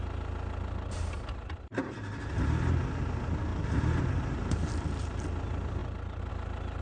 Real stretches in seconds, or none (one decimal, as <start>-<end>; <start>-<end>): 0.0-6.8